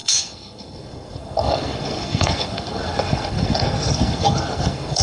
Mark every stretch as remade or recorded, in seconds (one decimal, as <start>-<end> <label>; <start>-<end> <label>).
0.0-5.0 remade